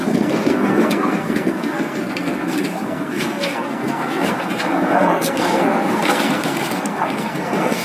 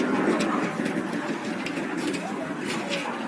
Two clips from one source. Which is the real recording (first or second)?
second